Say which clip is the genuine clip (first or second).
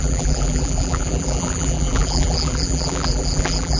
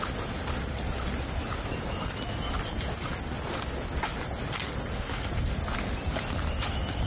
second